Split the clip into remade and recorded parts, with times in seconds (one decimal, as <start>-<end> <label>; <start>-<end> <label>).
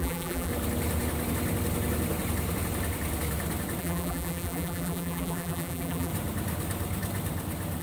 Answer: 0.0-0.5 remade; 0.5-3.8 recorded; 3.8-6.1 remade; 6.1-7.8 recorded